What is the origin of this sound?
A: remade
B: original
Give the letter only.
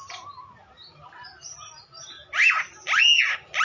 B